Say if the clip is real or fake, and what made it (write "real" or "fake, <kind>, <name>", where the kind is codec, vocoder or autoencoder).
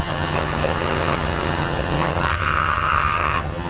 fake, vocoder, HiFi-GAN